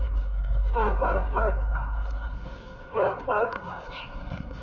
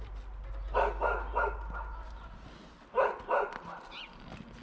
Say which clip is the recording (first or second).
second